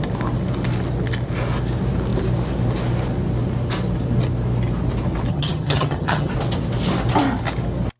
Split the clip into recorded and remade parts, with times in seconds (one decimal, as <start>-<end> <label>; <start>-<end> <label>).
0.0-5.3 recorded; 5.3-6.3 remade; 6.3-8.0 recorded

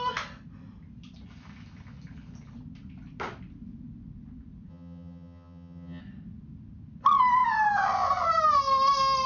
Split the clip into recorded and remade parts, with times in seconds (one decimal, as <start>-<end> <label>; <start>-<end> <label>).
0.0-4.7 recorded; 4.7-6.0 remade; 6.0-9.3 recorded

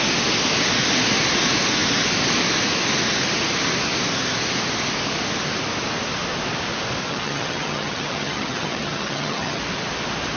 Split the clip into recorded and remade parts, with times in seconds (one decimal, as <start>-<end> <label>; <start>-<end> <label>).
0.0-7.0 recorded; 7.0-9.6 remade; 9.6-10.4 recorded

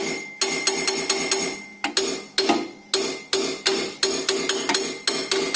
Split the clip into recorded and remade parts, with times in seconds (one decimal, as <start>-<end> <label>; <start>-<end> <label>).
0.0-5.6 recorded

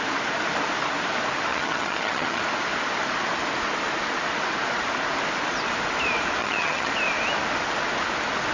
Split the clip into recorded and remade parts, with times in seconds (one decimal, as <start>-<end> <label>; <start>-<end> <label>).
0.0-1.5 recorded; 1.5-2.4 remade; 2.4-6.4 recorded; 6.4-6.9 remade; 6.9-8.5 recorded